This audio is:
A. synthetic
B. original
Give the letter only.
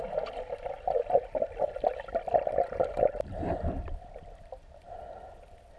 B